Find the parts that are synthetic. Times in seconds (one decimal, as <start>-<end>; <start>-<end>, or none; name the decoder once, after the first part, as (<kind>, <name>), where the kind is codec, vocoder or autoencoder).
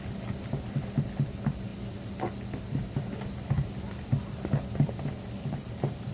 none